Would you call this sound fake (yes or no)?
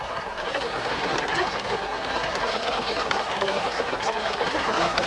yes